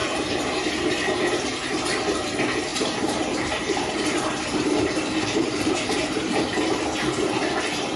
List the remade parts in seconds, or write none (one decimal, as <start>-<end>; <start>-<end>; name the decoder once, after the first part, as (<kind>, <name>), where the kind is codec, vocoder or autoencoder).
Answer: 0.0-0.5 (vocoder, BigVGAN v2); 2.7-6.8